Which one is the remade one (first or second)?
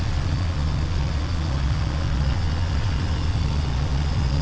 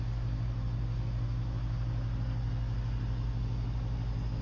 first